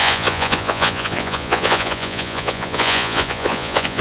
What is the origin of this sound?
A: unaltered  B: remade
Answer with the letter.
B